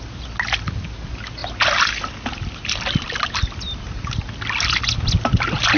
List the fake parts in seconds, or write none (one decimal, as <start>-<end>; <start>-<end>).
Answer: none

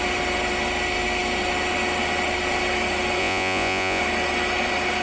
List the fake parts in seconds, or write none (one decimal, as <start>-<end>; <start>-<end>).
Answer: 3.2-4.0

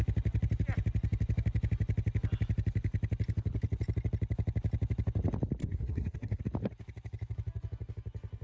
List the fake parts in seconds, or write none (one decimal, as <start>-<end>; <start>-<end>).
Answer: 5.6-6.4

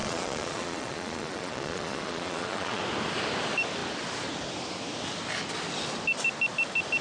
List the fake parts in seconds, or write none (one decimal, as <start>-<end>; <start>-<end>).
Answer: 0.0-2.8

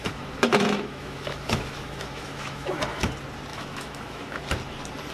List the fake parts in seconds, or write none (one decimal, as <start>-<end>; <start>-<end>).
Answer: 0.0-3.1; 3.5-4.4

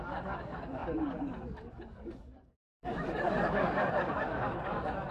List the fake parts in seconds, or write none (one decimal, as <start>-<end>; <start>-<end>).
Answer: 0.0-5.1

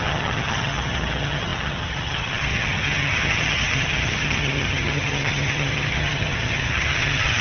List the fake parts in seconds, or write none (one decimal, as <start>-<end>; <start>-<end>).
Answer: 0.0-7.4

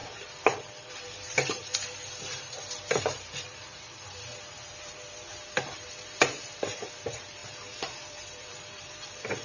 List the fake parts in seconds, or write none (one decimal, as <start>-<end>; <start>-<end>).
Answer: 0.0-9.4